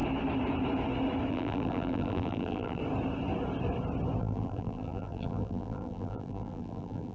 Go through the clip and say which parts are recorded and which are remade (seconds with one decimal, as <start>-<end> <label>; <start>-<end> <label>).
0.0-1.3 recorded; 1.3-2.8 remade; 2.8-4.2 recorded; 4.2-7.1 remade